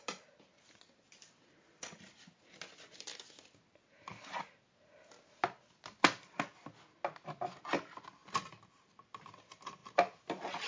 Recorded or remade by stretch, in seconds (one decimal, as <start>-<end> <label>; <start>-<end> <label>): 0.0-10.7 recorded